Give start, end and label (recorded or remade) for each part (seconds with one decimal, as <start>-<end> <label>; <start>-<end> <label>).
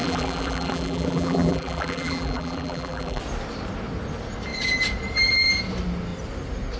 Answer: 0.0-3.2 remade; 3.2-6.8 recorded